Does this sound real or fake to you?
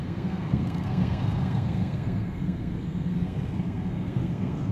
fake